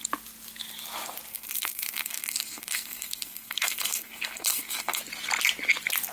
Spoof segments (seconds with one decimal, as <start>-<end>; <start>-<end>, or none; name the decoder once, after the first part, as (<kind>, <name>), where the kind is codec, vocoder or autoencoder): 1.3-5.0 (codec, SNAC)